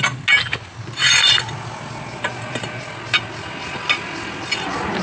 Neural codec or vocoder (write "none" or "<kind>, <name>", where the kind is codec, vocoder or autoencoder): none